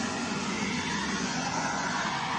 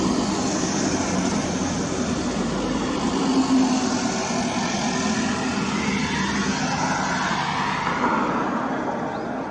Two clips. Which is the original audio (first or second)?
second